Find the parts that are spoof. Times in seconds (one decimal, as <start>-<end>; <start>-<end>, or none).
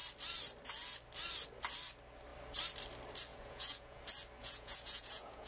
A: 3.3-4.0; 4.4-5.5